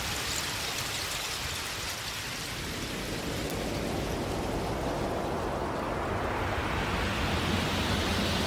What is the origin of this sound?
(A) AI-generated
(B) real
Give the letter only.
B